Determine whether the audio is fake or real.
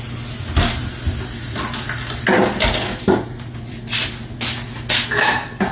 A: real